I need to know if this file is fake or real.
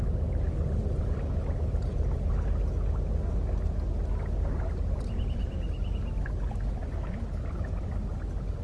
real